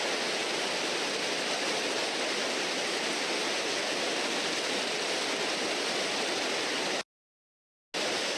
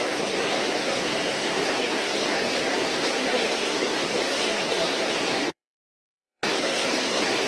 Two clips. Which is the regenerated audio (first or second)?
second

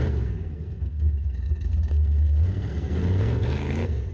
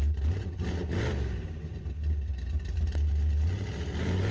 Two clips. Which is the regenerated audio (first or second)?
first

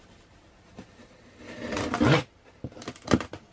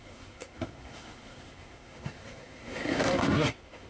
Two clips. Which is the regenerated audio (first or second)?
second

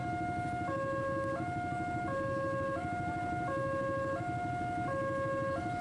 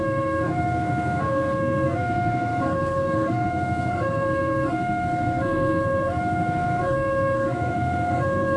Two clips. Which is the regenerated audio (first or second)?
second